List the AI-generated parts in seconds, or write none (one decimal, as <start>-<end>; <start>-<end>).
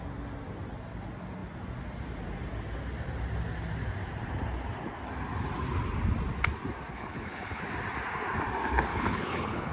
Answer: 6.9-7.6; 8.9-9.7